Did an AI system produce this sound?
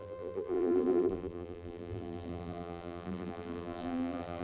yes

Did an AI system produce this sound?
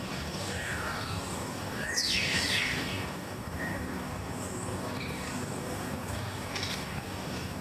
yes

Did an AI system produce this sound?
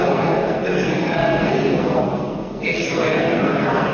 yes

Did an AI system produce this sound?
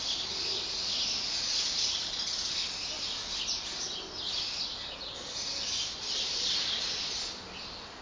no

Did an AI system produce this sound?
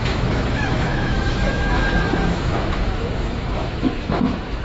yes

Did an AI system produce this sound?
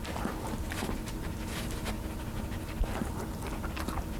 no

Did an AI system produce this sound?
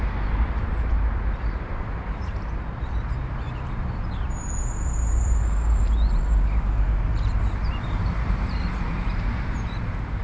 yes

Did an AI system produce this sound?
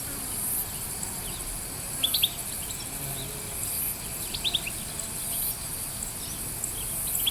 no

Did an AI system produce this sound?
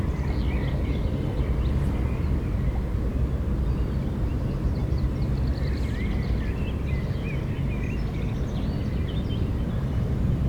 no